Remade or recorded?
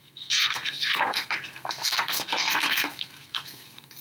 remade